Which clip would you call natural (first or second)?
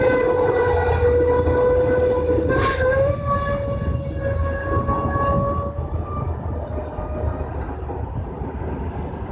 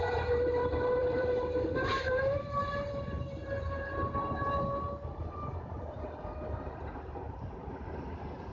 first